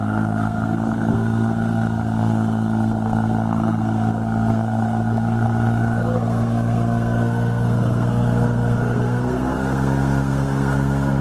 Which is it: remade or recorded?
remade